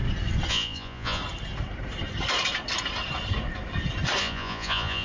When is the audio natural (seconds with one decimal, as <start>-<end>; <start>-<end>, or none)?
0.0-0.5; 1.2-4.2